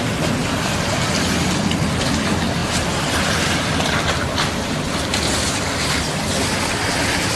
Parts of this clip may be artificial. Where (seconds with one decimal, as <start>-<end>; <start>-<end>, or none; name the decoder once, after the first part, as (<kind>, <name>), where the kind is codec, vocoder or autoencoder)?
0.4-0.9 (vocoder, BigVGAN v2); 2.6-5.8